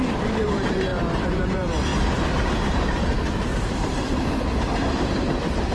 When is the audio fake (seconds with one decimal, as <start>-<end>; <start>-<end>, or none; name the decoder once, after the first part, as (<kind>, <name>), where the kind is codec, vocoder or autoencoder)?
0.0-1.9 (vocoder, BigVGAN v2); 2.4-5.7